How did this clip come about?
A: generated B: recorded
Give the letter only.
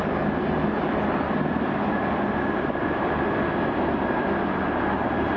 B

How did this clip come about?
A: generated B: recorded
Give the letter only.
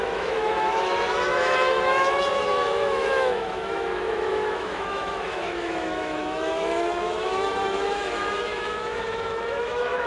A